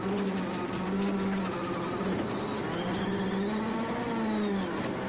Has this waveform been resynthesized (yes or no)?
no